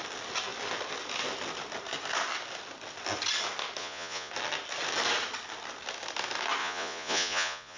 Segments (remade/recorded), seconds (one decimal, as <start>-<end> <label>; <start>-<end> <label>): 0.0-3.8 recorded; 3.8-4.3 remade; 4.3-6.6 recorded; 6.6-7.8 remade